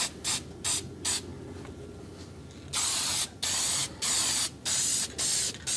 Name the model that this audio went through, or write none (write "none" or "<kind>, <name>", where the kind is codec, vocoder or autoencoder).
none